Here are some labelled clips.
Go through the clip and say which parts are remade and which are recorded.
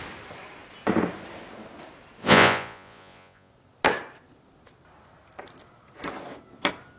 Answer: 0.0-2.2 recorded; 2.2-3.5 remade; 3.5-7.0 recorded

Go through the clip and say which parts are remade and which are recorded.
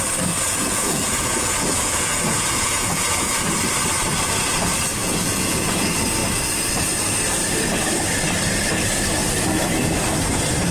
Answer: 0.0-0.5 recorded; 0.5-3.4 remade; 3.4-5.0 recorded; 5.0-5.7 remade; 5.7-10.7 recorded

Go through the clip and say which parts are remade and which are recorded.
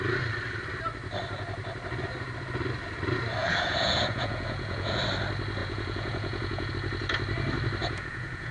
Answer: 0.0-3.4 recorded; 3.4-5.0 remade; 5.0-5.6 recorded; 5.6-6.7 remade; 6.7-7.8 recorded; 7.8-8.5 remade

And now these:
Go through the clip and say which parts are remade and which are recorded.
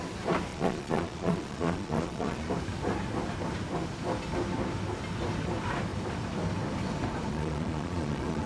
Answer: 0.0-0.5 recorded; 0.5-2.5 remade; 2.5-7.3 recorded; 7.3-8.5 remade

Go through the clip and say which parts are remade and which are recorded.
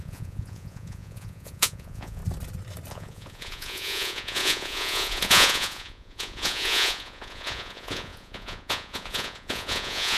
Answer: 0.0-2.2 remade; 2.2-2.9 recorded; 2.9-10.2 remade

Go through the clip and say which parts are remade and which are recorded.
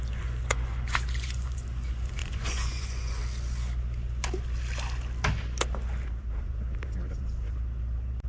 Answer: 0.0-3.2 remade; 3.2-8.3 recorded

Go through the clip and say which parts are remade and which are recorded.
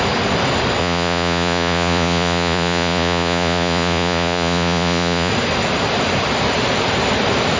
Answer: 0.0-0.8 recorded; 0.8-5.3 remade; 5.3-7.6 recorded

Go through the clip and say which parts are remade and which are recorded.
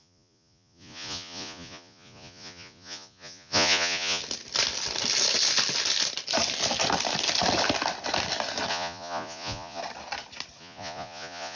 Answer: 0.0-4.2 remade; 4.2-8.7 recorded; 8.7-9.8 remade; 9.8-10.6 recorded; 10.6-11.6 remade